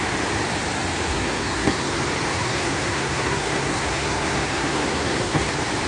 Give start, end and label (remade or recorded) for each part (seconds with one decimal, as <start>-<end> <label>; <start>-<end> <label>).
0.0-1.1 recorded; 1.1-1.9 remade; 1.9-2.3 recorded; 2.3-5.5 remade; 5.5-5.9 recorded